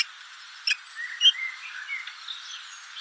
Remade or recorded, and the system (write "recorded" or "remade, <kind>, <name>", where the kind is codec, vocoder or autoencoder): recorded